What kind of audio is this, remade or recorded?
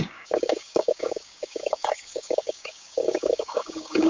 remade